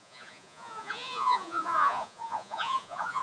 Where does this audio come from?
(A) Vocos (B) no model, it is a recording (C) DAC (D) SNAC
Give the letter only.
A